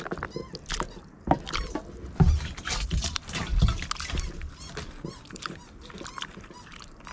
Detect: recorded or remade recorded